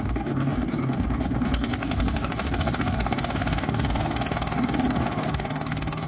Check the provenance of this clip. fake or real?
fake